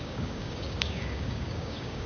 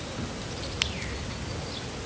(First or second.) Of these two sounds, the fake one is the first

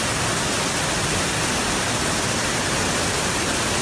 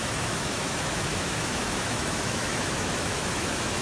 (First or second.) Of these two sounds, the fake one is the second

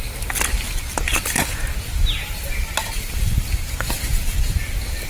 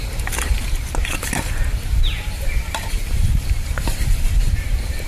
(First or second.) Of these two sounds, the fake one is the second